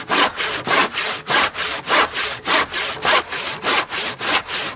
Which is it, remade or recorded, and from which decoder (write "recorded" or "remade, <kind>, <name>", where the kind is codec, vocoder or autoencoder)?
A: recorded